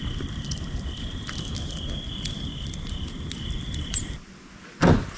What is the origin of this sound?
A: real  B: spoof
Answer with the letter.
A